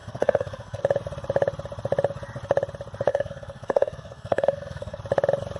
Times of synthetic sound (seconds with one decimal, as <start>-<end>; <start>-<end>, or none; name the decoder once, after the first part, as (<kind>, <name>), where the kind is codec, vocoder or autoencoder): 0.0-0.8 (codec, SNAC); 3.1-5.0